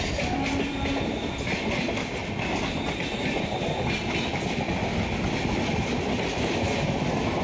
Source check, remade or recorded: recorded